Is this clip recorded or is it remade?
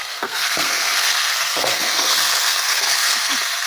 remade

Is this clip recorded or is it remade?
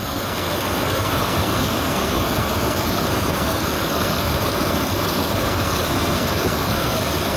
remade